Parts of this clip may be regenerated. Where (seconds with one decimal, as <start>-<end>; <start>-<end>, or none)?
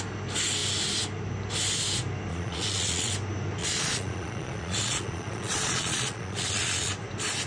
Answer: 2.3-3.1; 3.6-6.9